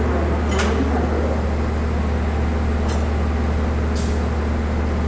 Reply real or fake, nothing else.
real